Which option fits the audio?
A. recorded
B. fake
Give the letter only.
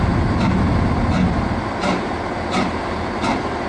A